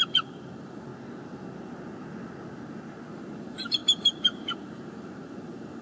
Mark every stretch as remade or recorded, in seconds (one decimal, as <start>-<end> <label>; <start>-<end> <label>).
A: 0.0-0.9 remade; 0.9-3.1 recorded; 3.1-5.8 remade